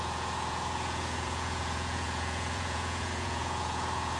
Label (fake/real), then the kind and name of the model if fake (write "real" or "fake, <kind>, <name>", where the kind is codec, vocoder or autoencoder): fake, vocoder, Vocos